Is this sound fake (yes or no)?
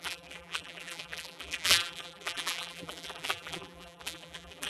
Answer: yes